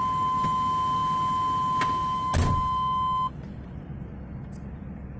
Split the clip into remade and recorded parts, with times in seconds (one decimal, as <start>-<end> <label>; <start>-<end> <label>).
0.0-5.2 recorded